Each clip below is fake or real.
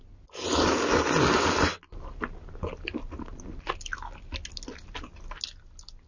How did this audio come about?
real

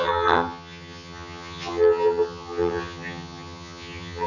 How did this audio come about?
fake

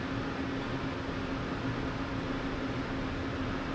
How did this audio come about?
real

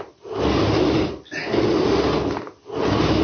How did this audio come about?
real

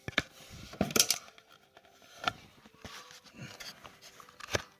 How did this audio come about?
real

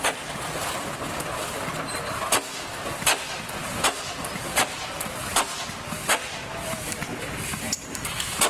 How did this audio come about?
real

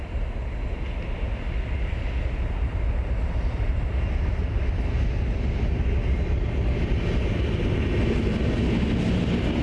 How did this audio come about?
real